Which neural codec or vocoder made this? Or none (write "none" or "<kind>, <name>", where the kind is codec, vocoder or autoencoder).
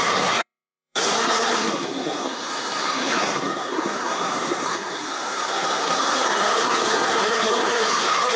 codec, SNAC